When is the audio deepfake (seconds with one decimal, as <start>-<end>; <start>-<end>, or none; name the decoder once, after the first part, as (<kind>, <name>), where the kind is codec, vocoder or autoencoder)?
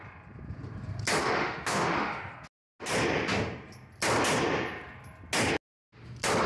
1.2-2.3 (autoencoder, DAC-VAE)